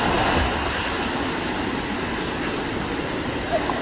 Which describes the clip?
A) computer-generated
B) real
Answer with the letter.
B